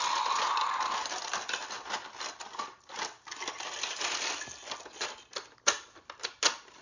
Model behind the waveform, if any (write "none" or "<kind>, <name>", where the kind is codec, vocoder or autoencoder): none